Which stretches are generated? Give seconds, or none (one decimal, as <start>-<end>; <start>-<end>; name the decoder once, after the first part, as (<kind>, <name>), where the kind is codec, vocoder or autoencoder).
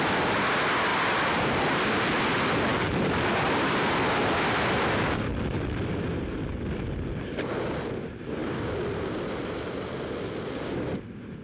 0.9-2.2 (vocoder, BigVGAN v2); 2.7-6.1; 8.4-10.7